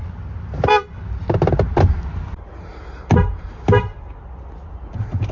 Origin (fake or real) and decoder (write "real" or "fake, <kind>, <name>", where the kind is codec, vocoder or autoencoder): real